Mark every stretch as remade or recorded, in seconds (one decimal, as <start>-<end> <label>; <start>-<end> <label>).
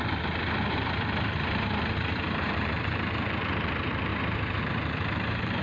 0.0-4.1 remade; 4.1-4.6 recorded; 4.6-5.6 remade